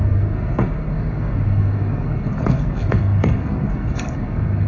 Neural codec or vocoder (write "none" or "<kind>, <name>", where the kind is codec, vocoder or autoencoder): codec, SNAC